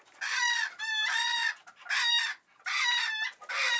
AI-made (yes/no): no